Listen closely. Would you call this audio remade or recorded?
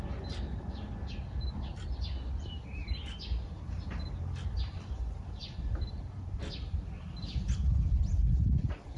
recorded